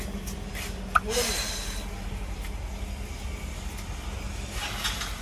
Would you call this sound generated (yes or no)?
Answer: no